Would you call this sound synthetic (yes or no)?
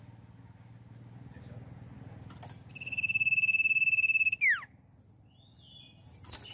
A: no